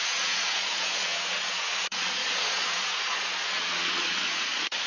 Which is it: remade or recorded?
remade